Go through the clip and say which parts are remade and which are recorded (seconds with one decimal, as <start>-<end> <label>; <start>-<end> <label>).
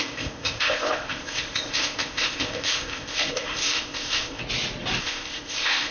0.0-4.4 remade; 4.4-5.0 recorded; 5.0-5.9 remade